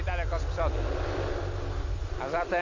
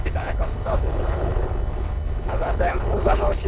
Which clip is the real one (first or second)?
first